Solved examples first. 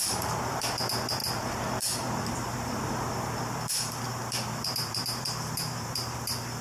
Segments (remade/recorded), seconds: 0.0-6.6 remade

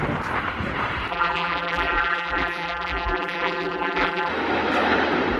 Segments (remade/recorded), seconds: 0.0-1.1 recorded; 1.1-4.3 remade; 4.3-5.4 recorded

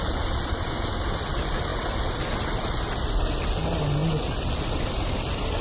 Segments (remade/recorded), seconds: 0.0-1.7 recorded; 1.7-2.8 remade; 2.8-5.6 recorded

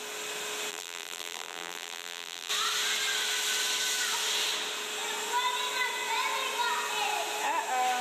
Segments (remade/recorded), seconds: 0.0-0.7 recorded; 0.7-2.5 remade; 2.5-8.0 recorded

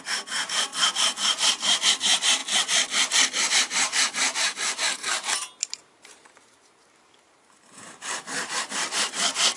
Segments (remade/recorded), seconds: 0.0-2.4 remade; 2.4-3.5 recorded; 3.5-5.0 remade; 5.0-6.3 recorded; 6.3-9.6 remade

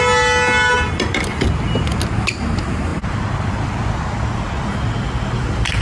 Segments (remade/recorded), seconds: 0.0-5.8 recorded